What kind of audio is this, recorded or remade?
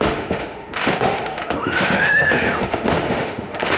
remade